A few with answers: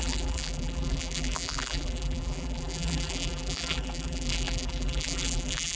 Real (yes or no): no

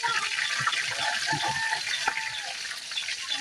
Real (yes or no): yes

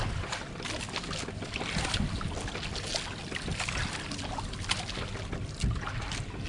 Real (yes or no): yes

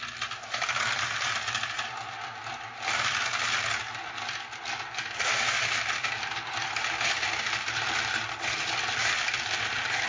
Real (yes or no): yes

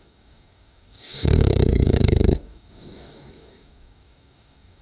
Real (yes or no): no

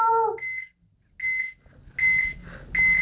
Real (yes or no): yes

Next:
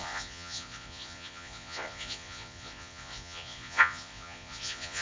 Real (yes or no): no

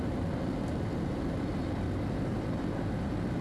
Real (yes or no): yes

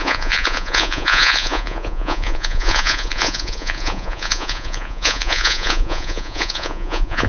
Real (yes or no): no